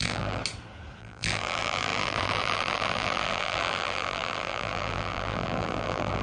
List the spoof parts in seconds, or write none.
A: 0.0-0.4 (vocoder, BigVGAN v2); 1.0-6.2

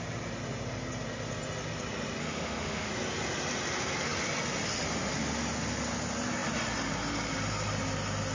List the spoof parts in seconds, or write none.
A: 2.2-2.9 (autoencoder, DAC-VAE)